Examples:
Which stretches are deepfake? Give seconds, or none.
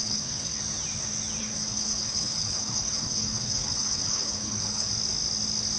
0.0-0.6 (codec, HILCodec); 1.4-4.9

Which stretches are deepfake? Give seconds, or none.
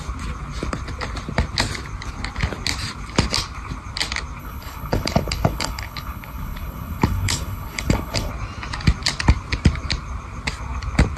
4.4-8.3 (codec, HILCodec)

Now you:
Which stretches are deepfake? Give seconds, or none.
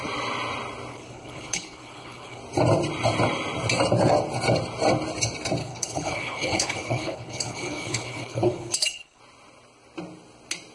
0.9-2.4 (codec, HILCodec); 5.6-9.2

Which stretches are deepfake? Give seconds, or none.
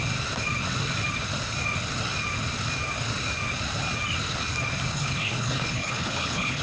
4.9-6.6 (codec, HILCodec)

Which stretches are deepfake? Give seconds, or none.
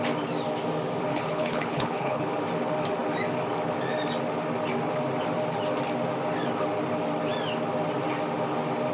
1.1-2.2 (codec, HILCodec)